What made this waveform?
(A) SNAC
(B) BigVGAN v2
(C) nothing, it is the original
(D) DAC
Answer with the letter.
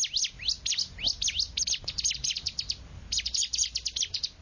C